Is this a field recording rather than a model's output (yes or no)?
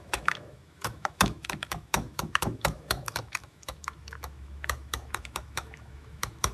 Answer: no